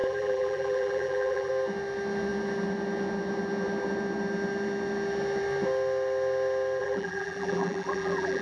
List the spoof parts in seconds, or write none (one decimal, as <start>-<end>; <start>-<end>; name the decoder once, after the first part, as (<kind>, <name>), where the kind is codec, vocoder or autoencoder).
0.0-1.5 (vocoder, BigVGAN v2); 6.8-8.4